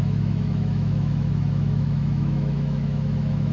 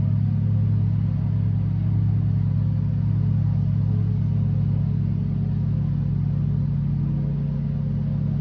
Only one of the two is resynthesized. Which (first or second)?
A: first